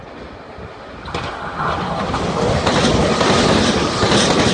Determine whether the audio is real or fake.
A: real